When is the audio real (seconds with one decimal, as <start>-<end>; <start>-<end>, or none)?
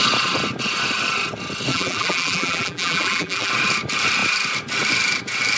0.0-1.7; 3.5-5.6